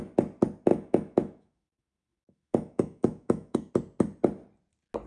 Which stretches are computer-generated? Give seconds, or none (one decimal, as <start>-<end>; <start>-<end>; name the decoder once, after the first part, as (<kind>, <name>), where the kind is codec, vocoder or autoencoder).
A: 0.7-3.7 (autoencoder, DAC-VAE)